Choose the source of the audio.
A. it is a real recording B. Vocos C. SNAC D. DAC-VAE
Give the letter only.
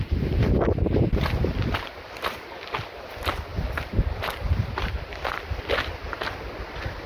A